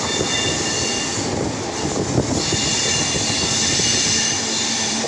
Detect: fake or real real